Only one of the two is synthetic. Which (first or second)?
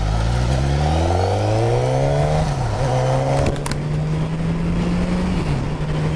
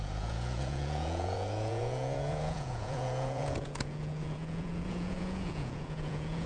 second